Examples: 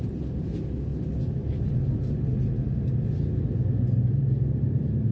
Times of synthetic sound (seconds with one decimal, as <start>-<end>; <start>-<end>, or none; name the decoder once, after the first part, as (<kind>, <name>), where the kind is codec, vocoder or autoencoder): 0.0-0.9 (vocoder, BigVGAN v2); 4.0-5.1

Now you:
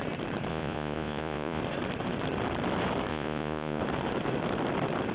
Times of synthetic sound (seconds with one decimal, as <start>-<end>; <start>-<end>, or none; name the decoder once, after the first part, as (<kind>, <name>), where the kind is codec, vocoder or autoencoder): 0.5-1.6 (vocoder, Vocos); 3.1-3.8

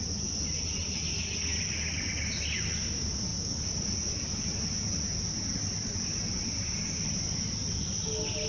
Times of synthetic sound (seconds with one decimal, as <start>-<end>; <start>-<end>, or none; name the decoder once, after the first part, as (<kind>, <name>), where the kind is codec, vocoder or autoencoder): none